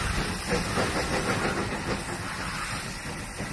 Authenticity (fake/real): real